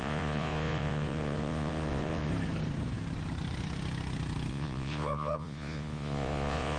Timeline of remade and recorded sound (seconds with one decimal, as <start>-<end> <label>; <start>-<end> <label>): 0.0-2.3 remade; 2.3-4.5 recorded; 4.5-6.8 remade